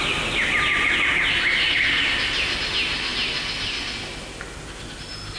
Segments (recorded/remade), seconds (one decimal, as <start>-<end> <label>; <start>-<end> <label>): 0.0-5.4 recorded